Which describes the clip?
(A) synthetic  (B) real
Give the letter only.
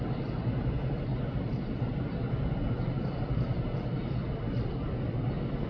B